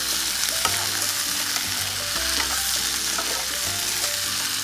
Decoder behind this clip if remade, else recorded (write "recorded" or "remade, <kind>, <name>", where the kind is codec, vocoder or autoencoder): recorded